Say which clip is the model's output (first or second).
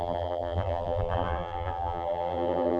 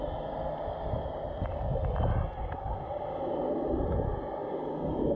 first